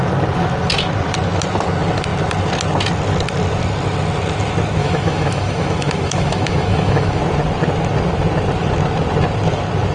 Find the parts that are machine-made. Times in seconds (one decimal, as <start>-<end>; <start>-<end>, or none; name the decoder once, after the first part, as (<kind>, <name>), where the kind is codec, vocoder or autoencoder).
4.8-7.2 (autoencoder, DAC-VAE)